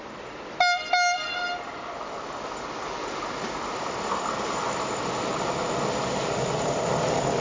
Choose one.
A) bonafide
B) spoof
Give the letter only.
A